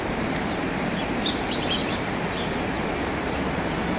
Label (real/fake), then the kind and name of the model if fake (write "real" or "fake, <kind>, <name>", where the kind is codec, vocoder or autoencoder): fake, vocoder, BigVGAN v2